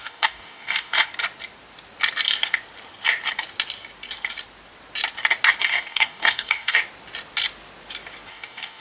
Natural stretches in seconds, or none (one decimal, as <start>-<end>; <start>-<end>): 1.1-5.6; 6.8-8.3